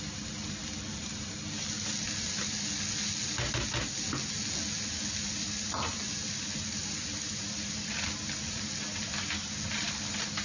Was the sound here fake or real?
real